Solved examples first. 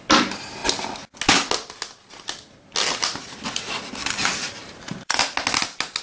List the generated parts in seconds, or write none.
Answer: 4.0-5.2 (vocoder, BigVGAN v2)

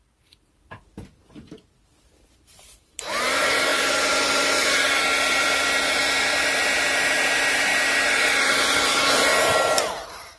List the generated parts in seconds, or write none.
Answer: 0.0-7.7 (vocoder, BigVGAN v2); 8.4-9.3; 9.9-10.4

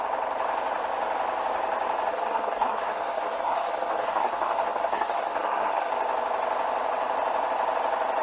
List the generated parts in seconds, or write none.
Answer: 2.1-5.9 (codec, SNAC)

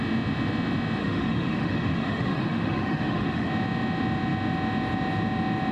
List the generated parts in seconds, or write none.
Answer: 1.0-3.5 (autoencoder, DAC-VAE)

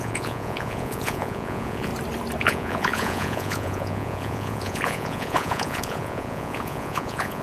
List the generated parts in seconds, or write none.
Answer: 0.0-1.9 (vocoder, Vocos); 2.4-7.4

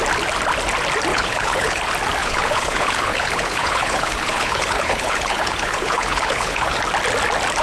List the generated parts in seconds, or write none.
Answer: 1.1-1.8 (codec, HILCodec); 2.2-6.8

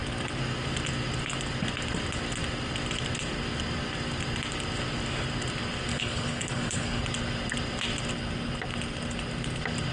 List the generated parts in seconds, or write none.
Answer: 5.9-7.0 (codec, HILCodec)